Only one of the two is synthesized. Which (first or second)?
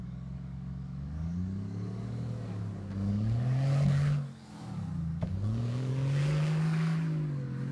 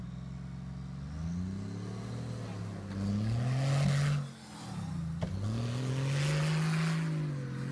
first